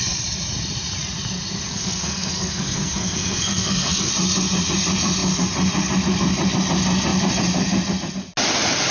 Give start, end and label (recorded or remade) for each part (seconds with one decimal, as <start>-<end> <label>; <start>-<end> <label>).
0.0-1.7 recorded; 1.7-4.1 remade; 4.1-8.9 recorded